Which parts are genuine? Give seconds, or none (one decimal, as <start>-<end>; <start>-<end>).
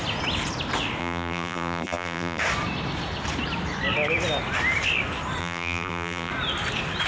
0.0-1.0; 2.4-5.4; 6.3-7.1